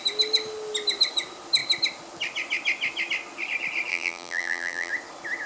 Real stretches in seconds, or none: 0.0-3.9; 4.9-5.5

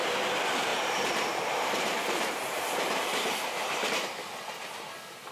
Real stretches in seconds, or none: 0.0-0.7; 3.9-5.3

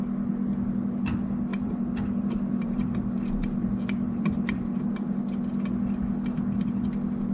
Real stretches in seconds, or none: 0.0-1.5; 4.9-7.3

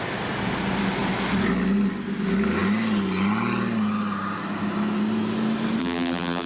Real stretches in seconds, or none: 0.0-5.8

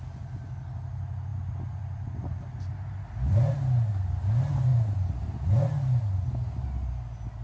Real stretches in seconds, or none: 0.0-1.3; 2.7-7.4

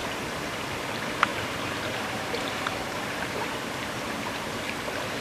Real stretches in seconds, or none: 0.0-1.3; 3.5-5.2

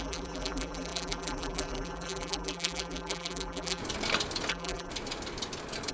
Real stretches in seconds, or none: 3.8-4.5; 4.9-5.9

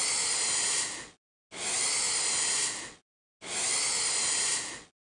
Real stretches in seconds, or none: 0.0-5.1